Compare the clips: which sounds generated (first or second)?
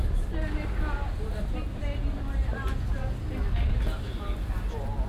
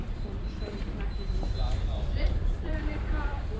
second